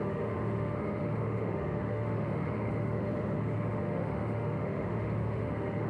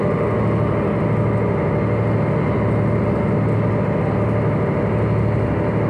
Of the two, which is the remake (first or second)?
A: first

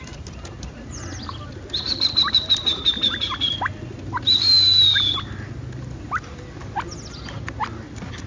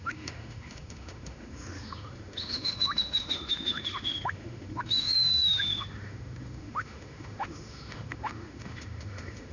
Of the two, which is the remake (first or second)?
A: second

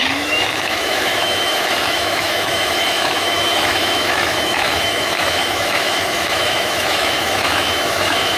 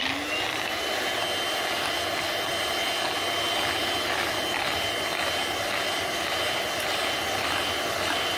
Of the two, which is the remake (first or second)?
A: first